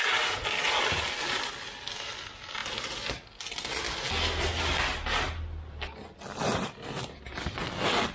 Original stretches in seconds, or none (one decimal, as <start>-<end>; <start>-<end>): 0.0-8.1